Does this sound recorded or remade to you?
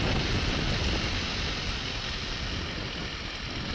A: recorded